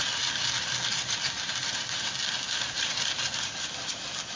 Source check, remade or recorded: recorded